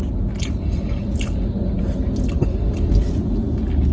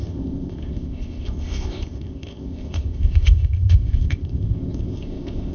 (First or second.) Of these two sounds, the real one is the first